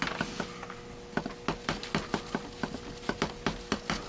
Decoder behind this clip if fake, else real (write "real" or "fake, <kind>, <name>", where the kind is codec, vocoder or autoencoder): real